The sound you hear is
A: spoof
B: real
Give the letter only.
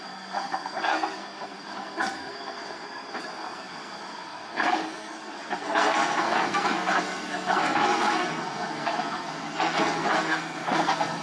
A